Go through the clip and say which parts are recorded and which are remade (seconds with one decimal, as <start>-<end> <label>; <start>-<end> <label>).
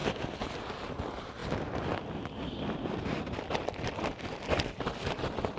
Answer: 0.0-5.6 recorded